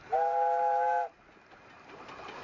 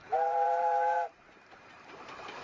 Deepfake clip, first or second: second